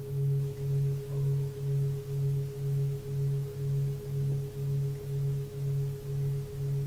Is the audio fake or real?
fake